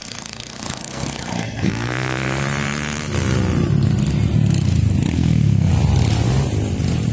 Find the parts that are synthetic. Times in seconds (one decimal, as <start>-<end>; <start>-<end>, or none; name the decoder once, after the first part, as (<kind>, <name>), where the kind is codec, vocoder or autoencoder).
0.0-2.4 (codec, SNAC); 5.1-5.7

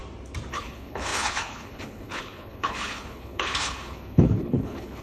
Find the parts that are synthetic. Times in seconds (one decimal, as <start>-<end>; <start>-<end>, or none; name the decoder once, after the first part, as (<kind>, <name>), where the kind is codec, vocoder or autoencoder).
0.5-5.0 (codec, HILCodec)

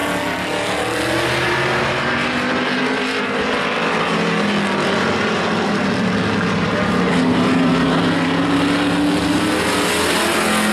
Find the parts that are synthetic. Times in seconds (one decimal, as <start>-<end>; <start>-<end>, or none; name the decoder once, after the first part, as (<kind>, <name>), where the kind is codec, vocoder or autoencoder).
none

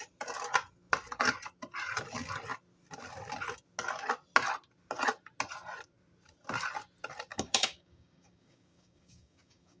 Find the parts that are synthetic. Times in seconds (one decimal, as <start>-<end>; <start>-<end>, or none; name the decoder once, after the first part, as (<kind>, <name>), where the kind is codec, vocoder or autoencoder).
7.3-9.8 (codec, DAC)